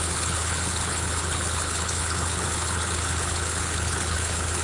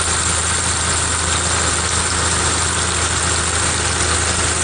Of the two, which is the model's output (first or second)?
first